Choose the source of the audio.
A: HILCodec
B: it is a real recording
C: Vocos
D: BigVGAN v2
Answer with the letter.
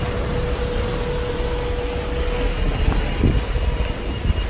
B